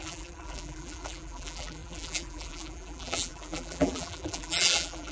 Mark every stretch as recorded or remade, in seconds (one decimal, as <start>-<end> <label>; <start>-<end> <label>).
0.0-5.1 remade